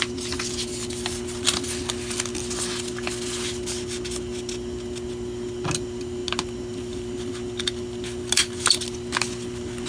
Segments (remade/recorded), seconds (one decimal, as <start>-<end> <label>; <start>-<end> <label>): 0.0-9.9 recorded